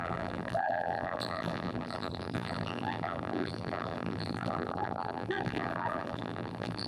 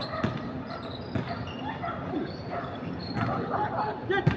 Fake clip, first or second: first